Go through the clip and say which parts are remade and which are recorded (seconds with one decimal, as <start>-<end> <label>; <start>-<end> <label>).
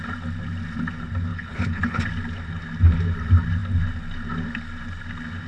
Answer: 0.0-1.3 recorded; 1.3-2.0 remade; 2.0-5.5 recorded